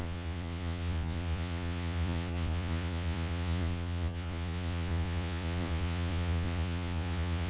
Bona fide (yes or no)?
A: no